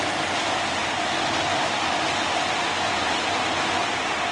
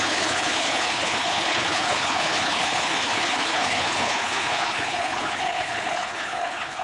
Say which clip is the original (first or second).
first